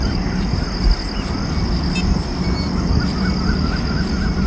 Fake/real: real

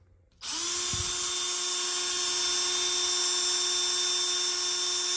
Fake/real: real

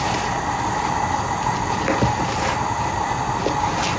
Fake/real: real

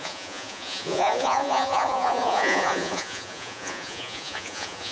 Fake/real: fake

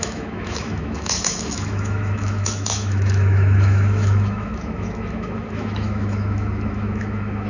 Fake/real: fake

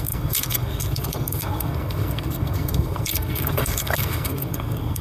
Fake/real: fake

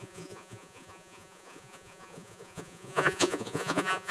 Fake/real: fake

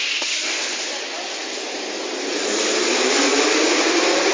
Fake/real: real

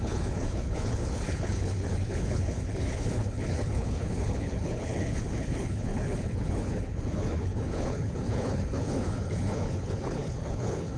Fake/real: fake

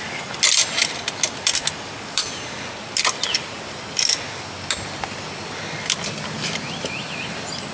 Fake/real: real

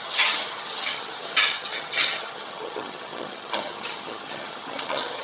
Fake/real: fake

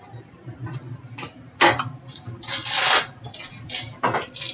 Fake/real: real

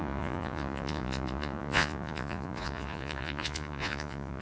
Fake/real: fake